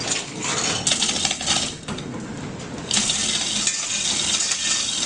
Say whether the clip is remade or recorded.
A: recorded